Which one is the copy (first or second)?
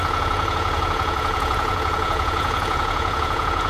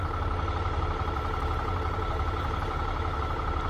first